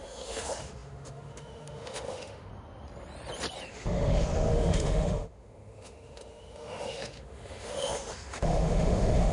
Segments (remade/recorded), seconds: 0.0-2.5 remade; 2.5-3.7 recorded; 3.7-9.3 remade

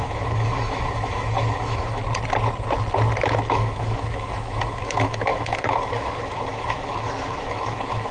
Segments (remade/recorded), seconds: 0.0-2.0 remade; 2.0-3.5 recorded; 3.5-8.1 remade

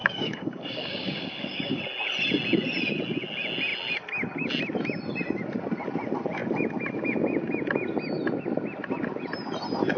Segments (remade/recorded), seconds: 0.0-1.8 remade; 1.8-10.0 recorded

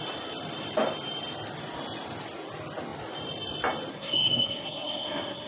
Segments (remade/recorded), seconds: 0.0-3.9 recorded; 3.9-5.5 remade